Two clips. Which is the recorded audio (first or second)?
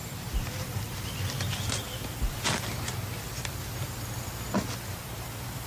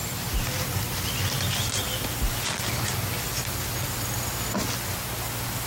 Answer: second